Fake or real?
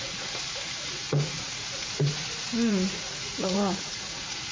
fake